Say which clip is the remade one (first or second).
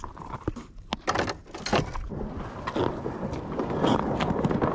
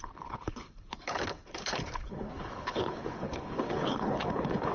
second